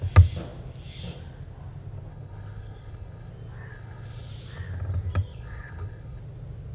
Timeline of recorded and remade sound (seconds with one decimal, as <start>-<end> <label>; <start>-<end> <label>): 0.0-2.1 recorded; 2.1-3.3 remade; 3.3-3.7 recorded; 3.7-4.3 remade; 4.3-5.3 recorded; 5.3-6.2 remade; 6.2-6.7 recorded